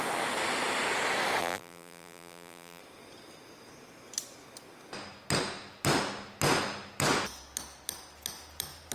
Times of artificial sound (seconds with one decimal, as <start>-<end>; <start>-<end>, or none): 1.4-2.8